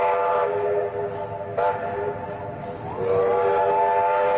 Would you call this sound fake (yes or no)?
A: no